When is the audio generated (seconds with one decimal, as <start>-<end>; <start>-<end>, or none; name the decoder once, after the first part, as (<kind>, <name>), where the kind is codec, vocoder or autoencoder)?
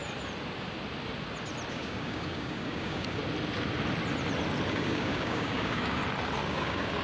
1.7-3.2 (codec, DAC); 4.7-6.0; 6.5-7.0